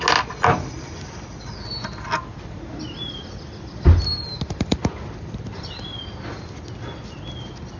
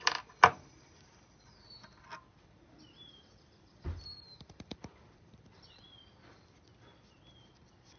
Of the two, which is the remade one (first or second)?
second